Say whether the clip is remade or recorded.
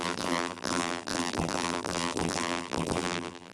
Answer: remade